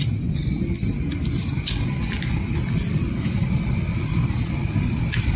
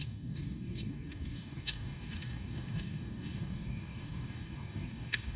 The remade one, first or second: second